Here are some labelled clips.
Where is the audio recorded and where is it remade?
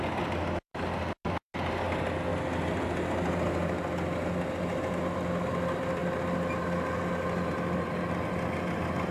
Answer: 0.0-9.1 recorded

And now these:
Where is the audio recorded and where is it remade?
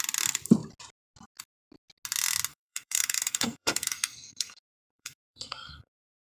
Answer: 0.0-2.5 recorded; 2.5-6.3 remade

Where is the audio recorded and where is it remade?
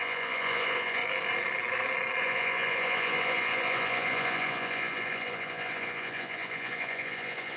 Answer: 0.0-1.0 remade; 1.0-2.2 recorded; 2.2-7.6 remade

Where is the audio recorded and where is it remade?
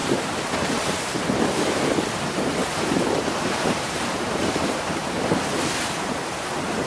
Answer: 0.0-2.6 recorded; 2.6-6.9 remade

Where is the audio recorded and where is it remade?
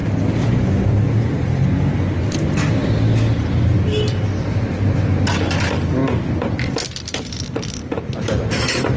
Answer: 0.0-9.0 recorded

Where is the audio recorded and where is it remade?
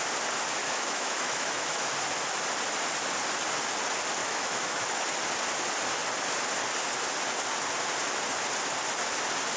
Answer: 0.0-0.6 recorded; 0.6-1.9 remade; 1.9-4.2 recorded; 4.2-5.0 remade; 5.0-9.6 recorded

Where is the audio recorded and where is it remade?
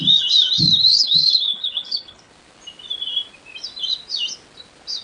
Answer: 0.0-0.9 recorded; 0.9-2.3 remade; 2.3-5.0 recorded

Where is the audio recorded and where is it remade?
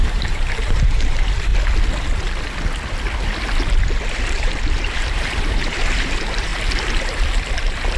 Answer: 0.0-1.5 remade; 1.5-4.2 recorded; 4.2-6.5 remade; 6.5-8.0 recorded